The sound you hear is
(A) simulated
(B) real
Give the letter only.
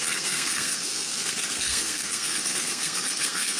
A